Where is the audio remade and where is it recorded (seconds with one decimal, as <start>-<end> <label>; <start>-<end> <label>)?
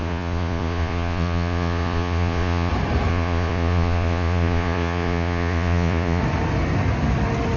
0.0-2.7 remade; 2.7-3.1 recorded; 3.1-6.2 remade; 6.2-7.6 recorded